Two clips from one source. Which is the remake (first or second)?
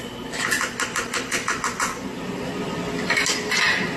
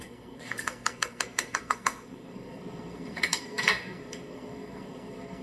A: second